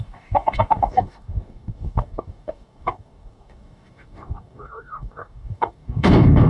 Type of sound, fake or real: fake